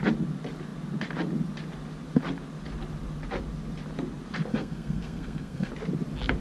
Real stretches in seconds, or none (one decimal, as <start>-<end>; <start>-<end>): 0.0-4.5; 5.7-6.4